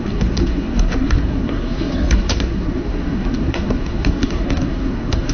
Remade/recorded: remade